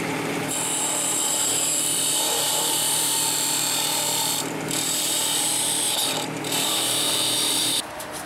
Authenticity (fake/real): fake